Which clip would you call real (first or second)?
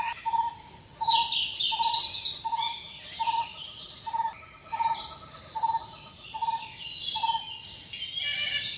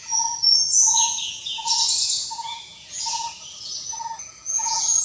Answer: first